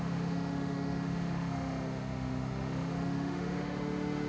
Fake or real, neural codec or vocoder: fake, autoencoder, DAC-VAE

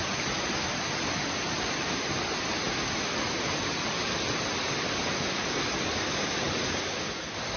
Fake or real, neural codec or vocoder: real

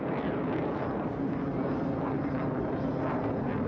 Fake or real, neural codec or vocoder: real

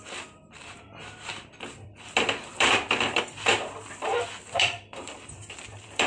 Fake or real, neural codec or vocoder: fake, vocoder, BigVGAN v2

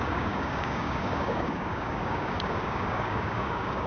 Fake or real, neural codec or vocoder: fake, codec, DAC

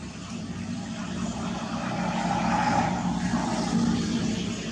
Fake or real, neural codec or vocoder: real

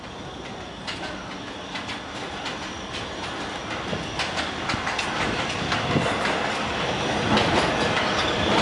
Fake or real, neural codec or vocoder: real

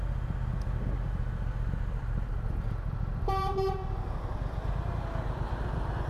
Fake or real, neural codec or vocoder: real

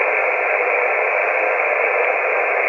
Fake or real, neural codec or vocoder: real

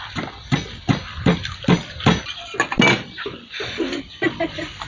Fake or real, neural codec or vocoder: real